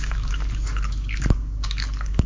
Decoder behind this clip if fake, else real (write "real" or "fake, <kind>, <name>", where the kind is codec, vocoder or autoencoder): fake, codec, DAC